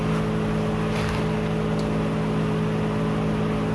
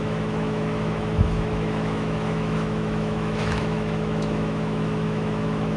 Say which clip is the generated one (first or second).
second